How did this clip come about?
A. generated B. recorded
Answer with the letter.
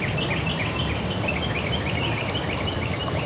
A